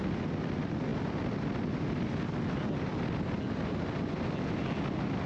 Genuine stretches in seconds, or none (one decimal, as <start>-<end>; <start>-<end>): 0.0-5.3